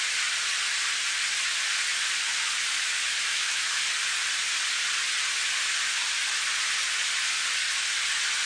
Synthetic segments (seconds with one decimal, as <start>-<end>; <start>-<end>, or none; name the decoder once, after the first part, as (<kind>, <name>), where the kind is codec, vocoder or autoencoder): 3.3-3.8 (autoencoder, DAC-VAE)